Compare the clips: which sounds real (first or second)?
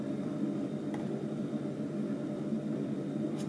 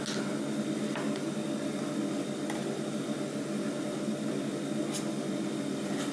second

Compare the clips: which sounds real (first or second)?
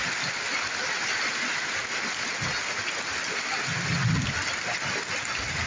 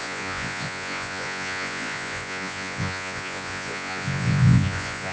first